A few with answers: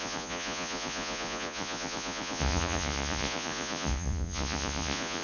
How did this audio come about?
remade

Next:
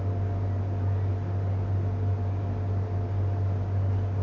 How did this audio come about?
recorded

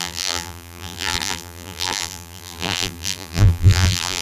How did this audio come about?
remade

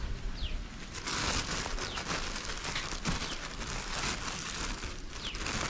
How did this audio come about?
recorded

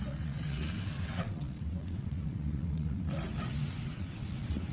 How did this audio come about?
remade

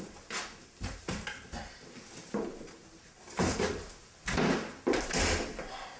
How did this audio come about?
recorded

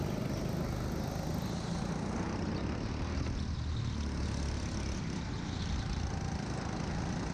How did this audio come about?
recorded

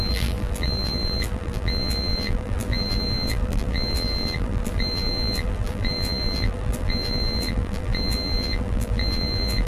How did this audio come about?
remade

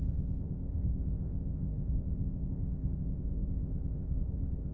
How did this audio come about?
remade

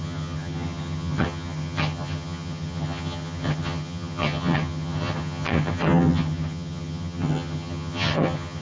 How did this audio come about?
remade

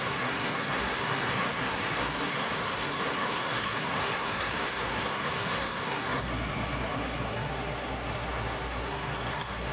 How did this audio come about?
remade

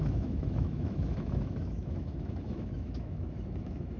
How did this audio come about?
remade